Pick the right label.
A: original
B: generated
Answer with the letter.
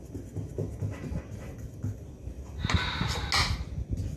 A